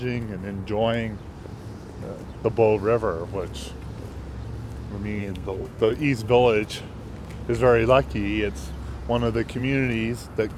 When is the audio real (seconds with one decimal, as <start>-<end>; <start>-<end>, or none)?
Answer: 0.0-5.2; 5.9-10.6